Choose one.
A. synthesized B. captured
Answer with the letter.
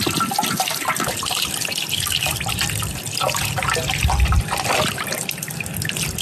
B